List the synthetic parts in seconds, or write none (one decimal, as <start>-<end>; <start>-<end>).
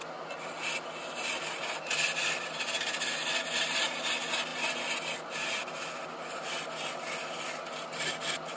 none